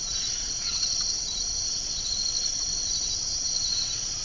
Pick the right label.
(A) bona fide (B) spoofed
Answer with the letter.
B